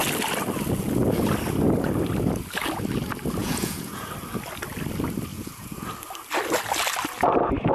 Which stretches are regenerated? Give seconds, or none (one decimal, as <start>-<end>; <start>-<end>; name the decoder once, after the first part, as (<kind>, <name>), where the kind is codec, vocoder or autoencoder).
3.4-4.1 (vocoder, Vocos); 5.3-5.9